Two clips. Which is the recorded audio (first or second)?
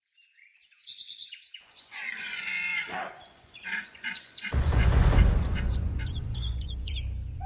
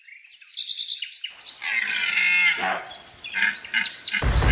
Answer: second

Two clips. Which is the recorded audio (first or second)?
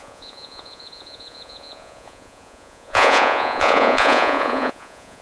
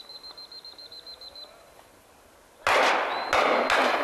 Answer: second